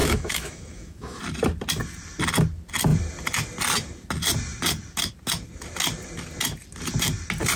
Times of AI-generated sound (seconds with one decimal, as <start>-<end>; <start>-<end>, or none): 0.0-1.2